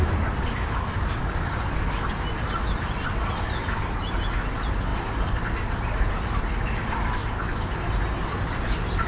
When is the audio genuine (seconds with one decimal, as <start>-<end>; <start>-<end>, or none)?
0.0-9.1